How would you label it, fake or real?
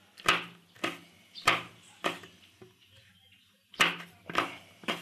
real